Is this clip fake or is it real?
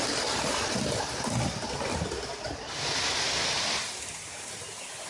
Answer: real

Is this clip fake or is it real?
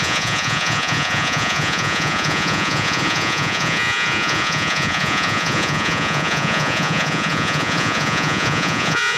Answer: fake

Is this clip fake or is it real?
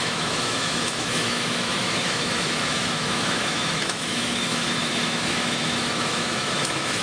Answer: fake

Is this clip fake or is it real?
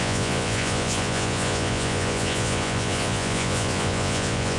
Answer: fake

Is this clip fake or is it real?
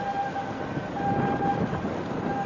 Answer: real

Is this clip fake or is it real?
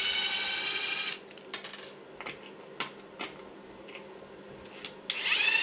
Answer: real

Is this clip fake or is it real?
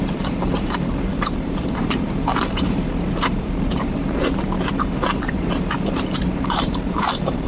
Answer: fake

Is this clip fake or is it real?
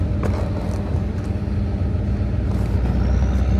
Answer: real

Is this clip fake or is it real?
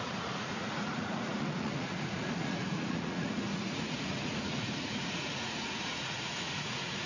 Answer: fake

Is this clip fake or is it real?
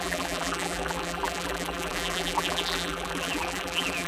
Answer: fake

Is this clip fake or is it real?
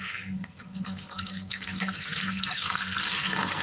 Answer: fake